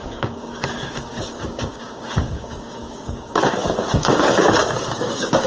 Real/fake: fake